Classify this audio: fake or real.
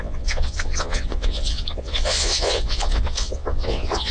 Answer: fake